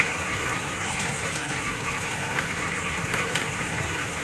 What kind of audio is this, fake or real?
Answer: fake